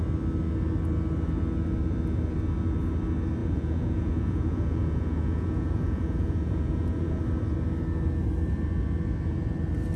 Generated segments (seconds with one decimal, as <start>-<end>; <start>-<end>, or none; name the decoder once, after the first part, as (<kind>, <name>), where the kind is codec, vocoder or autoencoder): 3.4-7.2 (vocoder, Vocos)